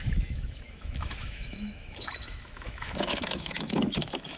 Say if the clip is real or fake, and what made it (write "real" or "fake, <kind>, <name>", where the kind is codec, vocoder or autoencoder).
fake, autoencoder, DAC-VAE